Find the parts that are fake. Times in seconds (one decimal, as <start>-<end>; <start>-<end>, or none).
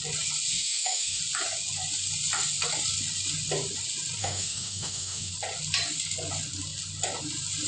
0.5-1.2; 4.2-5.3